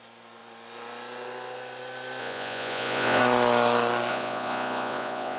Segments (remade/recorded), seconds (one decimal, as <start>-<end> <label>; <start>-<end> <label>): 0.0-2.2 recorded; 2.2-3.2 remade; 3.2-4.1 recorded; 4.1-5.4 remade